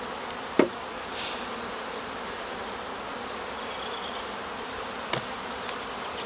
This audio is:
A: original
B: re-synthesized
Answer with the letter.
A